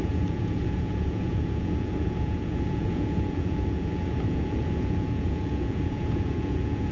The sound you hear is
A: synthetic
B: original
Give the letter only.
A